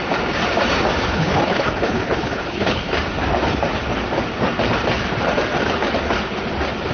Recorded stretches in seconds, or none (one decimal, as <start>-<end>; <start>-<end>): 0.0-1.1; 2.9-6.9